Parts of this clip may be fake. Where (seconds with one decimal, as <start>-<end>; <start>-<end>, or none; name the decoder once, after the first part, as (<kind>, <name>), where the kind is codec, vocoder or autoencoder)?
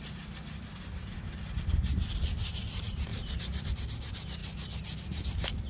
0.0-1.0 (vocoder, BigVGAN v2); 2.5-4.4